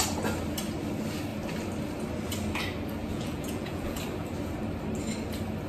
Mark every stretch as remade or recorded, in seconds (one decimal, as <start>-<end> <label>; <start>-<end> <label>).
0.0-3.0 recorded; 3.0-4.0 remade; 4.0-5.7 recorded